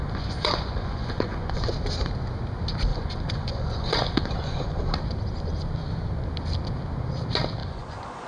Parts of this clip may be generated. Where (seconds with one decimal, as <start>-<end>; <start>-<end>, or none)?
0.0-1.7; 2.9-4.8; 7.6-8.3